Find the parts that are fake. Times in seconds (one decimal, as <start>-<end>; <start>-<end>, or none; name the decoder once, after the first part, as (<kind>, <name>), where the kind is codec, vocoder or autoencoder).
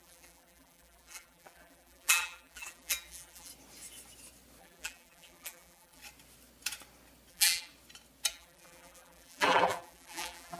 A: 0.0-3.5 (vocoder, BigVGAN v2); 4.6-6.0; 7.3-7.7; 8.3-10.6